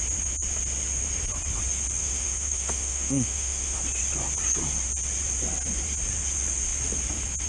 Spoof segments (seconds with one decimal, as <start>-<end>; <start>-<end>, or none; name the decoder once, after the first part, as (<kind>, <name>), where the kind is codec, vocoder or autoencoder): 2.0-3.8 (autoencoder, DAC-VAE)